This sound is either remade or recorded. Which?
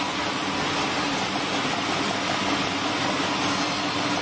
recorded